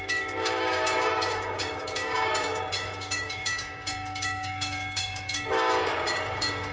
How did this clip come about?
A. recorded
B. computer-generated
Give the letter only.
B